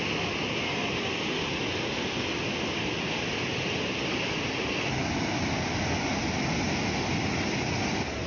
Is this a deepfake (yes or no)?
no